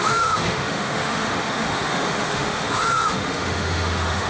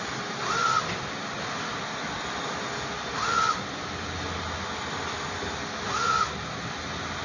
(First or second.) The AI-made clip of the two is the first